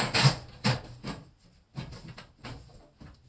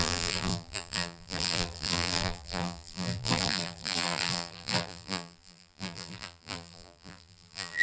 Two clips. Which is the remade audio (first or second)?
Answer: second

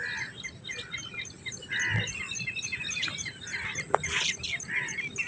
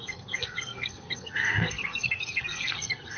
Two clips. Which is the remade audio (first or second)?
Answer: second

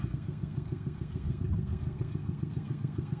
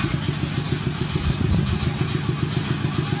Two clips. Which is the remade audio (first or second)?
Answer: first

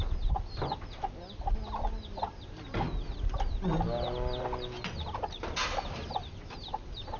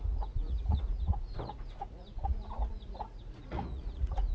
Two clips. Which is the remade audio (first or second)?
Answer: second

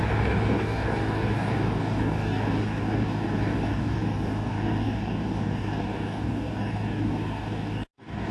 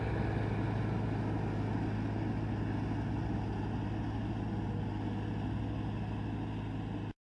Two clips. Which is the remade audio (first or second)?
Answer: first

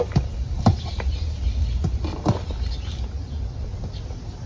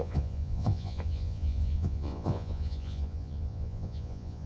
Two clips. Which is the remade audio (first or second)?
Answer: second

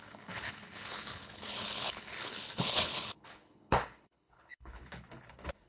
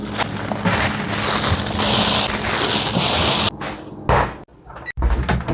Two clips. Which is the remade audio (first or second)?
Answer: first